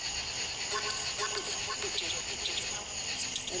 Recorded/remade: recorded